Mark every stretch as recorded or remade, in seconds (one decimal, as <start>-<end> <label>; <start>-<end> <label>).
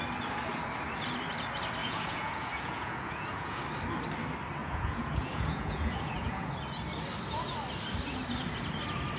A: 0.0-1.8 recorded; 1.8-3.6 remade; 3.6-4.6 recorded; 4.6-6.5 remade; 6.5-9.2 recorded